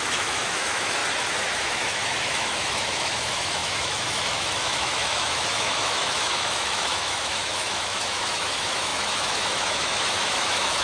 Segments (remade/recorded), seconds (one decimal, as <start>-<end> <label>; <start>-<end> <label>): 0.0-1.0 remade; 1.0-1.5 recorded; 1.5-10.8 remade